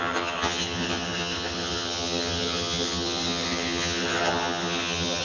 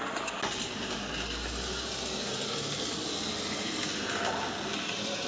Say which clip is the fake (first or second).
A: first